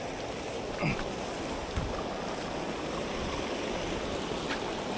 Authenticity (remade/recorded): recorded